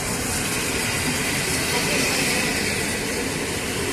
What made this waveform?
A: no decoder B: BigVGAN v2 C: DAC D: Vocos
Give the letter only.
A